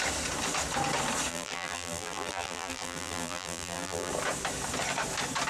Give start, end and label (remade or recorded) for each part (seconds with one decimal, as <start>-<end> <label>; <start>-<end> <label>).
0.0-1.3 recorded; 1.3-4.1 remade; 4.1-5.5 recorded